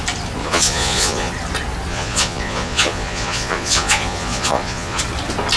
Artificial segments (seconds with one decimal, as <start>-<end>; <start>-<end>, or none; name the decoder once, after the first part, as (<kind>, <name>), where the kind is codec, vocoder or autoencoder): 0.4-1.3 (vocoder, Vocos); 1.9-5.0